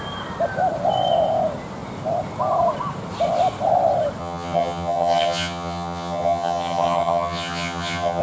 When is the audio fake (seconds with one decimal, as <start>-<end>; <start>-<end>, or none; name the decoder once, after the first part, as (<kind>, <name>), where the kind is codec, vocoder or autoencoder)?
4.2-8.2 (vocoder, HiFi-GAN)